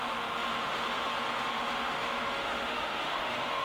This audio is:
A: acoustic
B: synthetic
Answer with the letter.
B